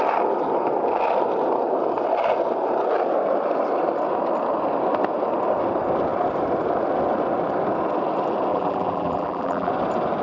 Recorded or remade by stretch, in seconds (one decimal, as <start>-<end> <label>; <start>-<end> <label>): 0.0-8.5 recorded; 8.5-9.7 remade; 9.7-10.2 recorded